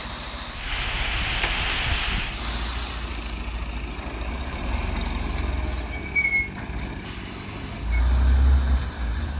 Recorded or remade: recorded